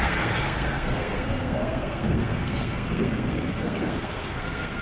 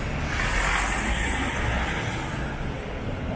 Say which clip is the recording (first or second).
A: second